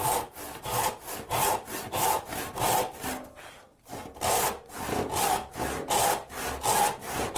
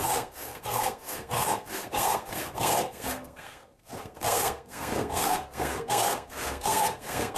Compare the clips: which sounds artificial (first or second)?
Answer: second